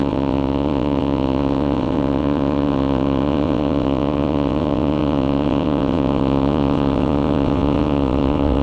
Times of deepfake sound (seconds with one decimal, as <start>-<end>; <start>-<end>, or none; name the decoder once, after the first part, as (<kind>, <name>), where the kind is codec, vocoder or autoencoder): 0.0-8.6 (vocoder, WaveNeXt)

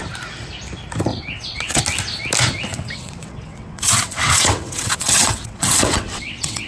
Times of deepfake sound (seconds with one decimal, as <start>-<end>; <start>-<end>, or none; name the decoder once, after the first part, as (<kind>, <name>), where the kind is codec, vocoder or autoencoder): 1.1-1.8 (vocoder, WaveNeXt); 2.7-6.7